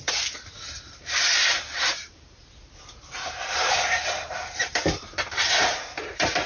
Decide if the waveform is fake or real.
fake